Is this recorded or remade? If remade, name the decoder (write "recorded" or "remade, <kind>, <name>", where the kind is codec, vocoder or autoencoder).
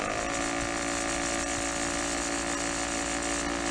recorded